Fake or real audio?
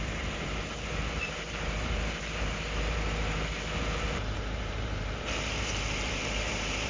fake